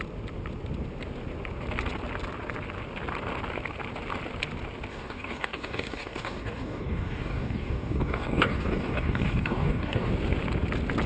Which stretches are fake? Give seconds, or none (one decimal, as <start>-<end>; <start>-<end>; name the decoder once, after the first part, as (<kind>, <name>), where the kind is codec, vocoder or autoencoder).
4.9-10.1 (codec, DAC)